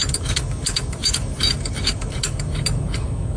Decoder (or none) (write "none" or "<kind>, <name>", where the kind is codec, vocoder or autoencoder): autoencoder, DAC-VAE